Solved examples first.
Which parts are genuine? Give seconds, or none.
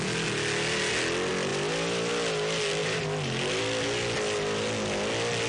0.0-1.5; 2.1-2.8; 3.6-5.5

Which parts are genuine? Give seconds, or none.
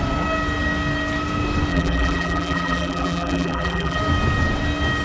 0.0-1.7; 4.0-5.0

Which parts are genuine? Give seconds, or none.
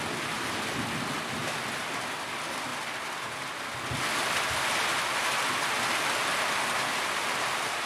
0.0-1.4; 2.0-7.9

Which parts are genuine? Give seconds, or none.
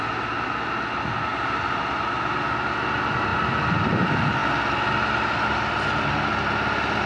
0.0-1.3; 2.4-7.1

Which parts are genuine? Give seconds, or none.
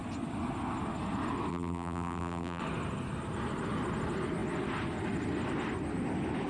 0.0-1.5; 2.6-6.5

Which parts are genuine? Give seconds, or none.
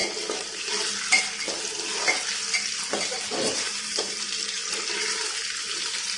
0.0-3.2; 4.6-5.8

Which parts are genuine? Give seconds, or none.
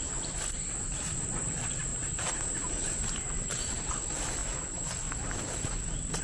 0.0-1.9; 3.9-4.4; 4.9-6.2